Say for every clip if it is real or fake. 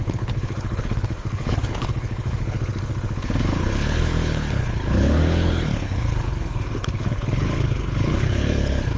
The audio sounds fake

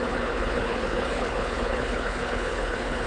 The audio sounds fake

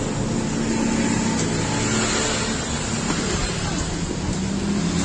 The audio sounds real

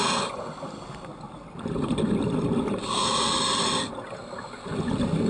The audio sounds real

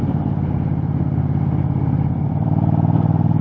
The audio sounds real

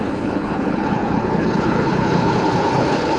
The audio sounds fake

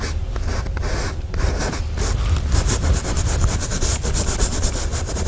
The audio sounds real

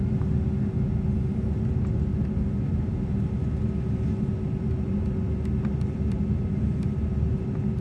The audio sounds real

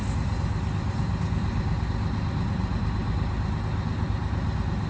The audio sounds real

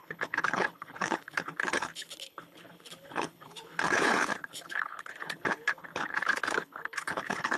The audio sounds fake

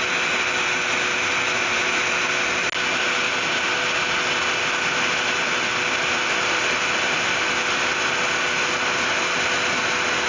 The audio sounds real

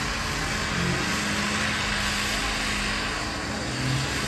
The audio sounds real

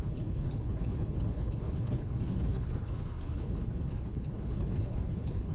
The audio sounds fake